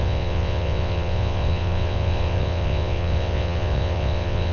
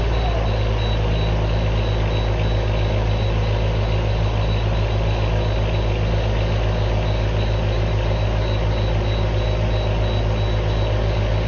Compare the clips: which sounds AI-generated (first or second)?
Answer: first